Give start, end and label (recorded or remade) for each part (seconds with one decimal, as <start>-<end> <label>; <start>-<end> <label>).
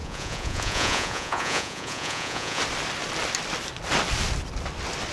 0.0-2.6 remade; 2.6-5.1 recorded